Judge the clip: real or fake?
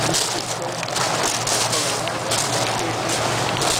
real